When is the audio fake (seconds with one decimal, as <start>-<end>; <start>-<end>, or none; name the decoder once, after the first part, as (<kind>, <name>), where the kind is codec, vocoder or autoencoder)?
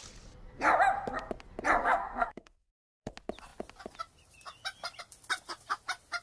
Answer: 1.8-3.1 (codec, SNAC)